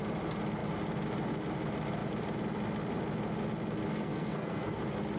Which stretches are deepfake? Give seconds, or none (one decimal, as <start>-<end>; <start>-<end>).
3.9-4.8

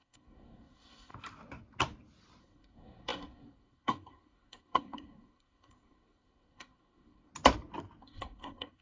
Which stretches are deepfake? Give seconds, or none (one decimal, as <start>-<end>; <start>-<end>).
0.0-1.1; 2.4-7.3; 8.0-8.8

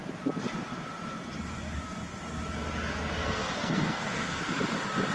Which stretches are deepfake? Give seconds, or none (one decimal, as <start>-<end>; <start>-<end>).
3.2-4.5

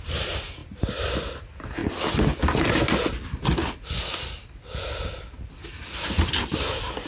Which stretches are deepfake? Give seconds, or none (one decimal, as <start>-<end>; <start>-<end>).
none

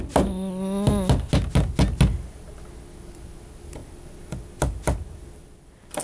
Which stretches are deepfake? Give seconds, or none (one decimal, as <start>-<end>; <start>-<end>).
none

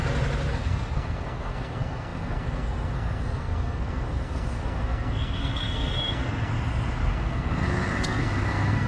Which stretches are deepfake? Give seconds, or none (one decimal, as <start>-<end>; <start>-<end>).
0.5-6.5; 7.1-8.9

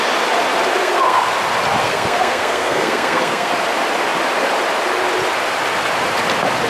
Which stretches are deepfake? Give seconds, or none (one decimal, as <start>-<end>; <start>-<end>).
0.8-1.3; 1.8-3.5